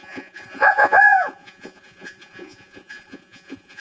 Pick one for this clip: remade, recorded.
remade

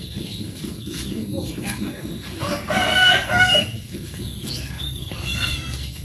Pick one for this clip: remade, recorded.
remade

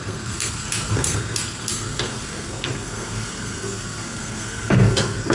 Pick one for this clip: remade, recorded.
remade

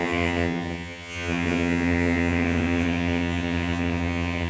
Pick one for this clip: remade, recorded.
remade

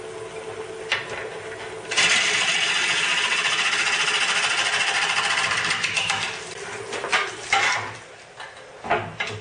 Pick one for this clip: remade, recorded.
recorded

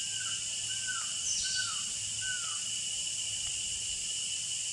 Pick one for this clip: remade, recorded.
recorded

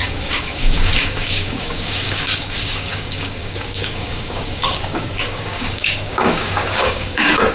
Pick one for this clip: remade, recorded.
remade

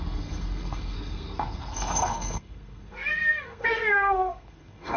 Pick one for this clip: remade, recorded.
remade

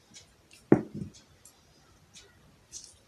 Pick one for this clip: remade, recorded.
recorded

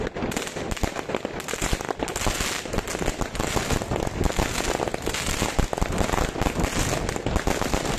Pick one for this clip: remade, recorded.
recorded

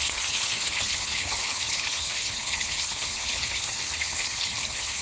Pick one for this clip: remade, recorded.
remade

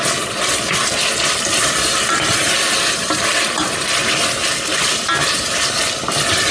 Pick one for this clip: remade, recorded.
recorded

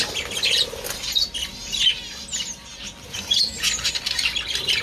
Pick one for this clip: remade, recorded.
recorded